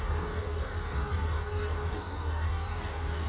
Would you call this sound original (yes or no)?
no